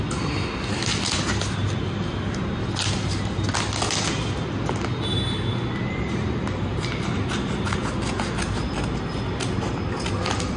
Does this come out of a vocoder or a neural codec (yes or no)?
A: no